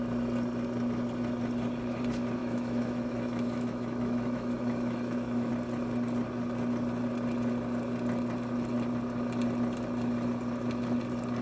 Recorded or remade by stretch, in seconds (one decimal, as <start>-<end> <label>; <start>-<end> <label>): 0.0-2.4 recorded; 2.4-5.5 remade; 5.5-11.4 recorded